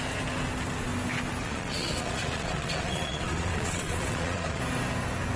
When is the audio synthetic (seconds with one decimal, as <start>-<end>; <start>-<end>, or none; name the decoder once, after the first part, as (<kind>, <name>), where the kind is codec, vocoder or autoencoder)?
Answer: 1.4-4.6 (vocoder, Vocos)